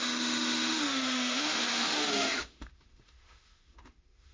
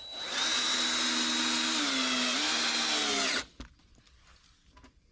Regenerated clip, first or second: first